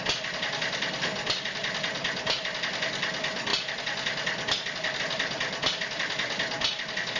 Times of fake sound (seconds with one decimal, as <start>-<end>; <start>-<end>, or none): none